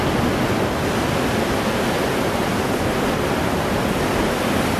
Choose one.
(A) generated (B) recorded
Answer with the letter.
B